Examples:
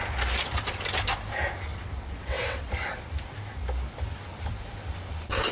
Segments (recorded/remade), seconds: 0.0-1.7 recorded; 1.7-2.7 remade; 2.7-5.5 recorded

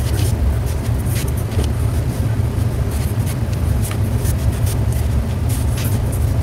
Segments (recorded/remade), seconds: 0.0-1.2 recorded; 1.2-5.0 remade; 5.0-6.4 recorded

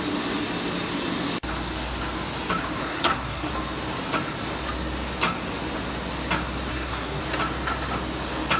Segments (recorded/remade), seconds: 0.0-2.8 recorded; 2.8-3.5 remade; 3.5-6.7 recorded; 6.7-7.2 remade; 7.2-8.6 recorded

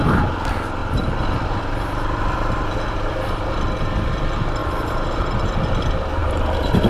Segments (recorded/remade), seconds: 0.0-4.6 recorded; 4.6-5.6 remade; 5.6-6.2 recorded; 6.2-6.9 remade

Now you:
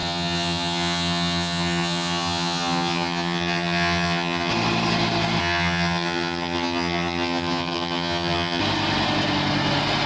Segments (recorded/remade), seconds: 0.0-4.5 remade; 4.5-5.4 recorded; 5.4-8.6 remade; 8.6-10.1 recorded